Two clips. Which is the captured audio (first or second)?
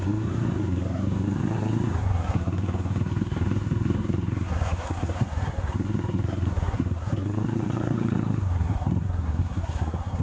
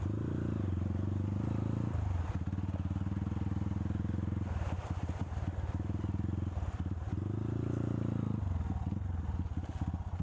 second